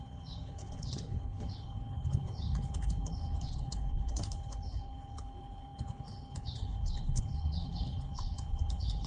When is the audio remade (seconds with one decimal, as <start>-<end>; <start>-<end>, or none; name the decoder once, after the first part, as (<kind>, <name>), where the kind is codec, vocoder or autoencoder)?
0.0-9.1 (codec, HILCodec)